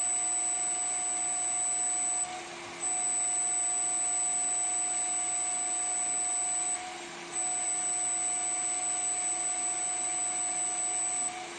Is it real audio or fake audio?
real